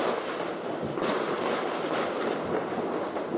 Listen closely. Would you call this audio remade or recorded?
recorded